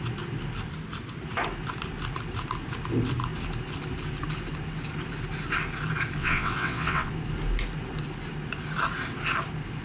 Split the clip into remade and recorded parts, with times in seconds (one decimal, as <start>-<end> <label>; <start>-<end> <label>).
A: 0.0-6.2 recorded; 6.2-7.1 remade; 7.1-9.8 recorded